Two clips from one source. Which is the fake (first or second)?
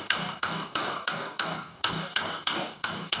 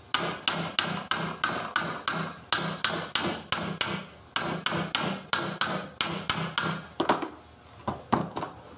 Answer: first